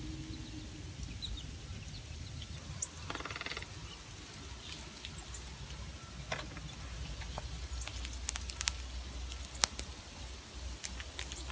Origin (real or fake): real